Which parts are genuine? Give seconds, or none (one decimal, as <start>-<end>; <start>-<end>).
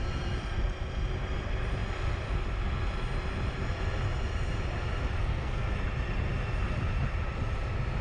0.0-5.2; 5.7-8.0